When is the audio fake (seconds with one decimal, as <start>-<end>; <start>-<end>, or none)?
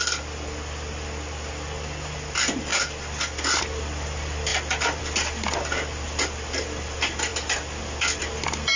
none